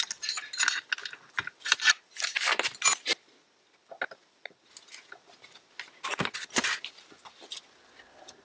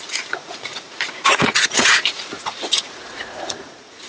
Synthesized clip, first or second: second